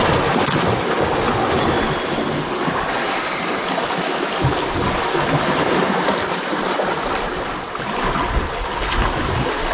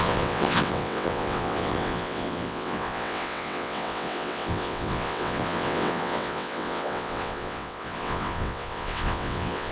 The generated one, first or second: second